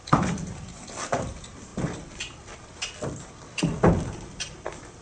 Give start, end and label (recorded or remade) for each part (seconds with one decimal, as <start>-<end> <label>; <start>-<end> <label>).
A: 0.0-5.0 recorded